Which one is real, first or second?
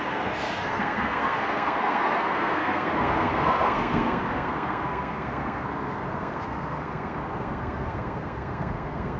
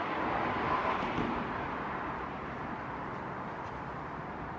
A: second